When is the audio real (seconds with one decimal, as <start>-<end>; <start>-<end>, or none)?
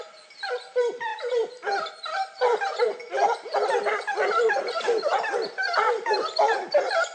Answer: 0.0-7.1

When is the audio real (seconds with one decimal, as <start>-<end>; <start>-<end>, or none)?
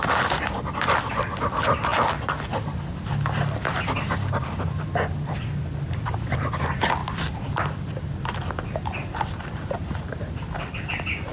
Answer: 0.0-7.0; 10.6-11.3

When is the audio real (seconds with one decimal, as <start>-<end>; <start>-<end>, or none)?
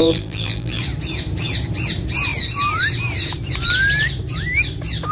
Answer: 0.8-5.1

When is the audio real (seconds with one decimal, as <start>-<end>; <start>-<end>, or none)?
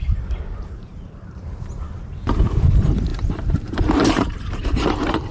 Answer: none